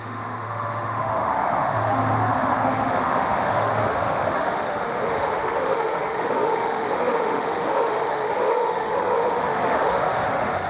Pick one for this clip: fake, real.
fake